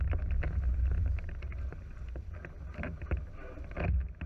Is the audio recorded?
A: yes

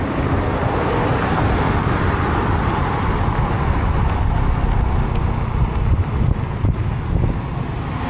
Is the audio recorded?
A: yes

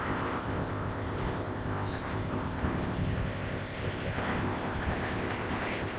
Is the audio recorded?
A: no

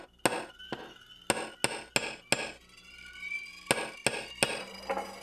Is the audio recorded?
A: yes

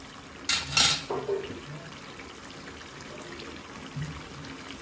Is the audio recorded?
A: yes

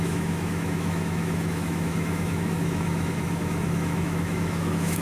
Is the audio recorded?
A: no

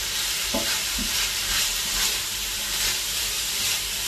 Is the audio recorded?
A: no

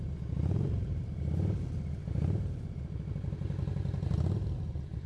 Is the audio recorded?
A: yes